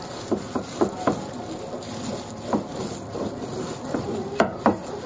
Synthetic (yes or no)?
no